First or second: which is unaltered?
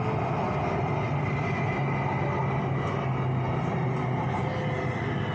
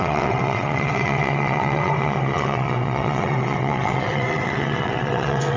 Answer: first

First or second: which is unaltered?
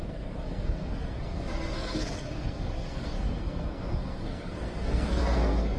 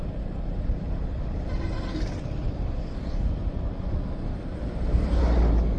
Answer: second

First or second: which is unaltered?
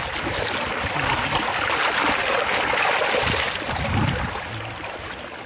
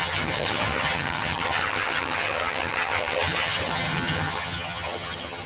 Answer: first